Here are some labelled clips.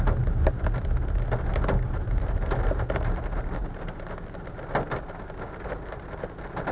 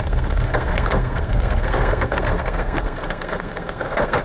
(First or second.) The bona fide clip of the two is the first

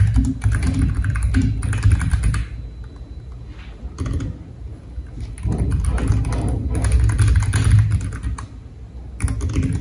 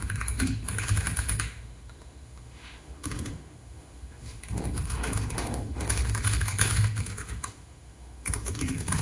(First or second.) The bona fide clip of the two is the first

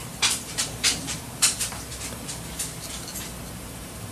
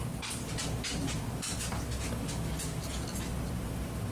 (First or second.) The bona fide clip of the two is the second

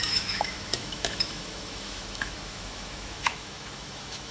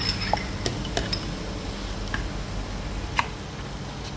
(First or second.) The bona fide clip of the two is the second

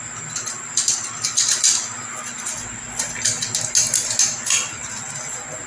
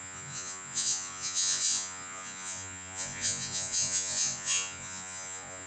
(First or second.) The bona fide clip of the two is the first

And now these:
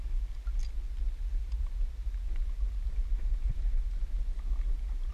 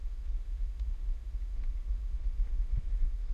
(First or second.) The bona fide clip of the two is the first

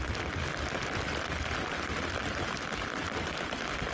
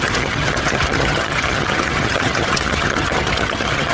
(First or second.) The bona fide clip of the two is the first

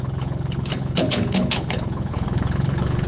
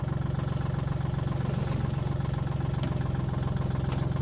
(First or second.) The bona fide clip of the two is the second